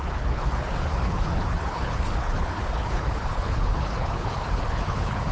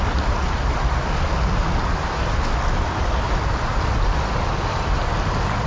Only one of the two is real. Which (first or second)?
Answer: second